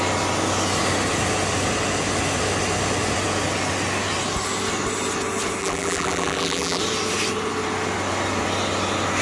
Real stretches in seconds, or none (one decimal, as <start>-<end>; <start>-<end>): 0.0-5.6; 6.8-9.2